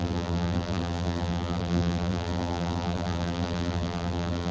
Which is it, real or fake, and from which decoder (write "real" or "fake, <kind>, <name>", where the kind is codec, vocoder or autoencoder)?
fake, vocoder, BigVGAN v2